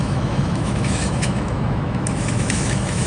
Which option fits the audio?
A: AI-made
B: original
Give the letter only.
A